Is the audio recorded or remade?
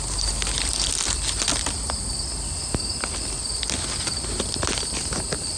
recorded